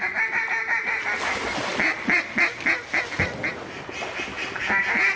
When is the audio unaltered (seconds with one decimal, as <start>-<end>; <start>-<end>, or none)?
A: 0.0-5.2